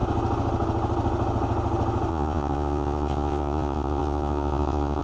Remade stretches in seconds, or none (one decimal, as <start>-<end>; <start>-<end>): 2.1-5.0